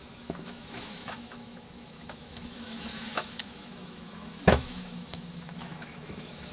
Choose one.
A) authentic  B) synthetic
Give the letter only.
B